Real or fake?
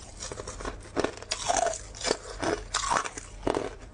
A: real